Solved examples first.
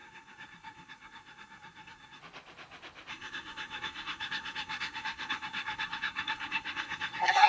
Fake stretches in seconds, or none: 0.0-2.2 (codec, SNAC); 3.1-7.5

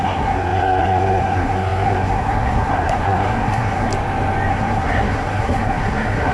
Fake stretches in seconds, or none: 0.0-3.9 (codec, SNAC); 4.5-6.3